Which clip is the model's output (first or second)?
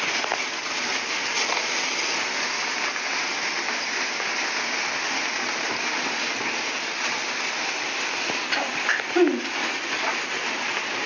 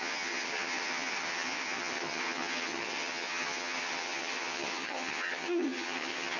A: second